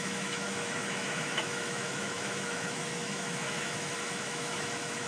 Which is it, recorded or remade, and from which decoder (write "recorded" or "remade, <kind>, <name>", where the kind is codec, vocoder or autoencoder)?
remade, autoencoder, DAC-VAE